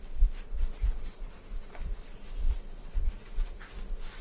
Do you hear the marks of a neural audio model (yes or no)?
no